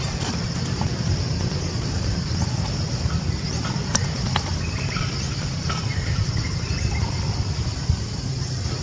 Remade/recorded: recorded